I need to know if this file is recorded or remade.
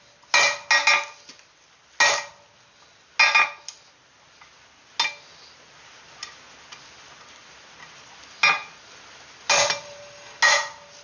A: recorded